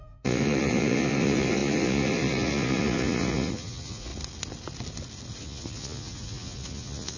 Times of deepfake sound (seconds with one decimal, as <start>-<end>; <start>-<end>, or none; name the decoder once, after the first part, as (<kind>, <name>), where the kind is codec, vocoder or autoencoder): 0.0-4.1 (vocoder, Vocos); 5.4-7.2